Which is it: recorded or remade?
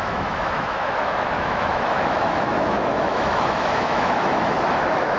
remade